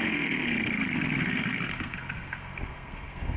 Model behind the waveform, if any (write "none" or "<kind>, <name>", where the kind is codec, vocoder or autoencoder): codec, SNAC